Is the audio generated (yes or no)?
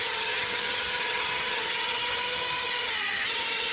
yes